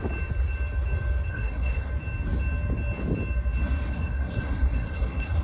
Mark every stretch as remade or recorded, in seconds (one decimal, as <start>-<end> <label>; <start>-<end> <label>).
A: 0.0-1.3 recorded; 1.3-1.9 remade; 1.9-3.9 recorded; 3.9-5.4 remade